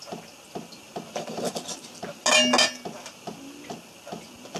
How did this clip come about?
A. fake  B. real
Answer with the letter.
B